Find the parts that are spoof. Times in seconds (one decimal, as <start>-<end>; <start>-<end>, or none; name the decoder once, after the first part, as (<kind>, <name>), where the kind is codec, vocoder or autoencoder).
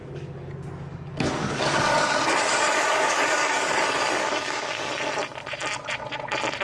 0.0-0.5 (codec, DAC); 0.9-4.9